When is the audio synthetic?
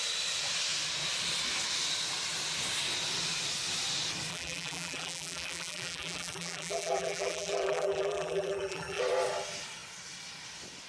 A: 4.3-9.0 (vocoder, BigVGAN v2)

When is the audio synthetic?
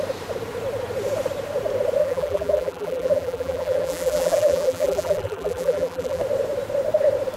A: 2.0-6.2 (vocoder, BigVGAN v2)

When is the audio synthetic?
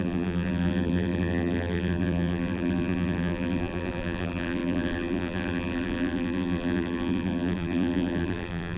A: 0.0-8.8 (vocoder, BigVGAN v2)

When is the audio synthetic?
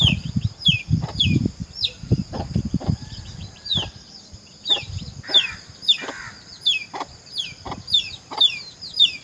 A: 0.0-1.6 (vocoder, BigVGAN v2); 2.3-9.2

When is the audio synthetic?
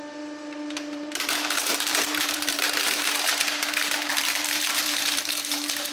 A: 0.0-5.9 (vocoder, BigVGAN v2)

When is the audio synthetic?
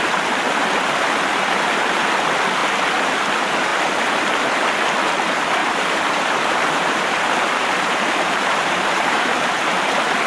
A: 1.3-2.1 (vocoder, BigVGAN v2); 5.6-9.6